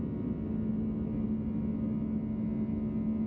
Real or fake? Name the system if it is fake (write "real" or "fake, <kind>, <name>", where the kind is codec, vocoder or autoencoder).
real